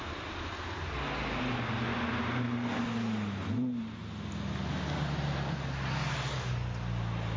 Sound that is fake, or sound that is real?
real